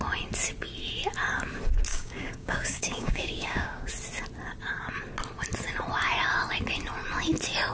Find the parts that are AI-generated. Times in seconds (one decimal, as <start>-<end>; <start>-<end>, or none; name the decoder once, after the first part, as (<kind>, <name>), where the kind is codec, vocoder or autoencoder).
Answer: 1.9-3.9 (codec, DAC)